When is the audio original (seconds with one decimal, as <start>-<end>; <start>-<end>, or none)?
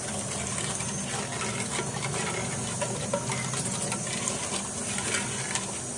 0.0-6.0